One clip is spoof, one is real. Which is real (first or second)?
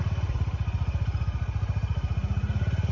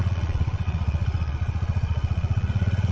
first